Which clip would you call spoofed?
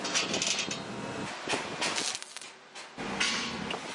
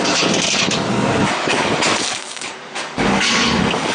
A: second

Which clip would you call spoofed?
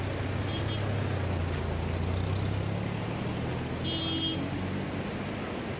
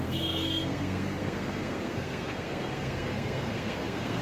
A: second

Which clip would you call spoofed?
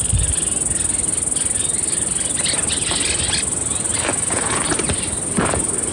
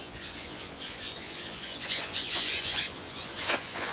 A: second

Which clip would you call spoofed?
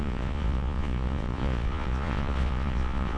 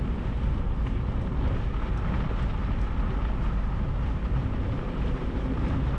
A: first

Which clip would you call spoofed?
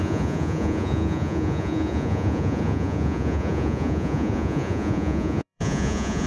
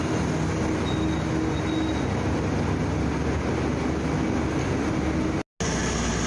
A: first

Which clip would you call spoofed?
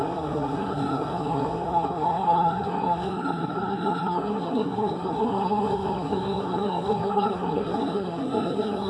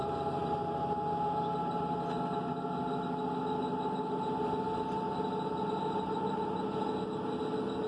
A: first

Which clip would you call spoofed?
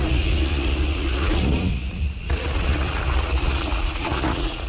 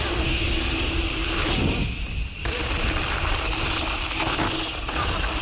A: first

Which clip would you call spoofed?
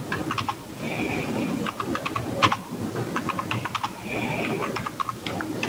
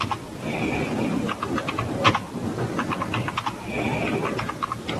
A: first